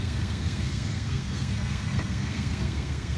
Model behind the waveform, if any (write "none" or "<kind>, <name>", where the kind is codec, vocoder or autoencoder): codec, SNAC